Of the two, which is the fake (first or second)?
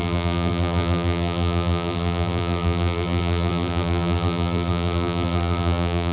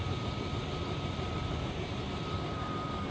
first